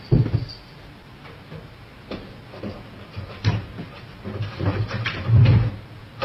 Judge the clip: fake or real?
fake